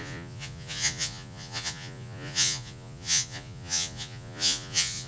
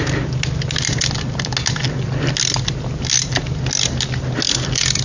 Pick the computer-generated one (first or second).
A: first